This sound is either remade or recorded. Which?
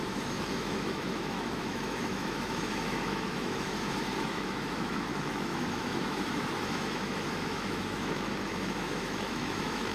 remade